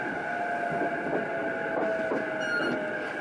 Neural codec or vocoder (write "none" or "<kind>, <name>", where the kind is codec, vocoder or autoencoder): none